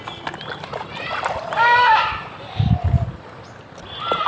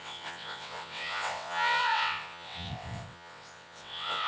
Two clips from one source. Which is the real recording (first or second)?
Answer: first